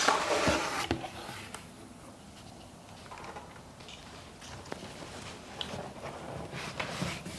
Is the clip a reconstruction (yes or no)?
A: no